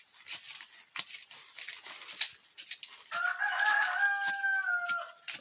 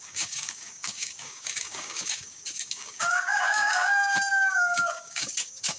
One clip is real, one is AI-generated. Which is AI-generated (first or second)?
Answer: second